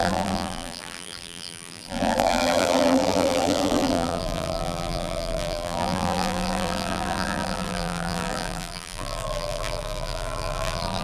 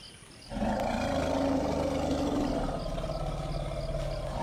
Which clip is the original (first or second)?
second